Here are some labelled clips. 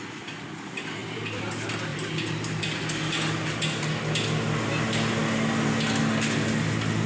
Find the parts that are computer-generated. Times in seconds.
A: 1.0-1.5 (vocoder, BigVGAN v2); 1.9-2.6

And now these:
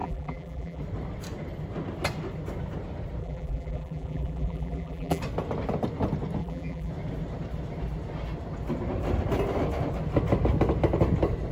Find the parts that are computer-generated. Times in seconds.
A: 0.0-0.8 (vocoder, BigVGAN v2); 3.2-5.2; 6.4-6.9

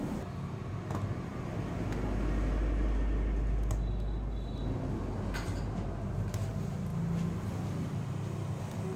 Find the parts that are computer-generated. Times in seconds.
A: none

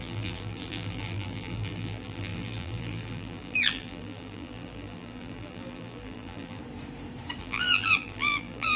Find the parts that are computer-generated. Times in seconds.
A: 0.0-6.6 (vocoder, BigVGAN v2); 7.4-8.8